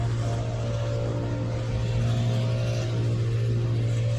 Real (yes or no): yes